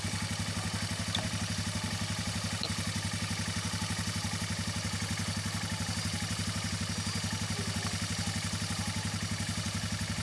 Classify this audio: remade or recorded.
recorded